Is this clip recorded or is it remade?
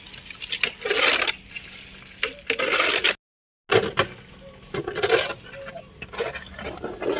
recorded